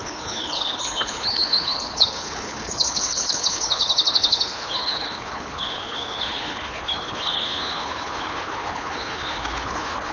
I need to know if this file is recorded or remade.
remade